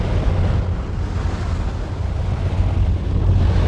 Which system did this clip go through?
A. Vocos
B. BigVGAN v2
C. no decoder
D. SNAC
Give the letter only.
C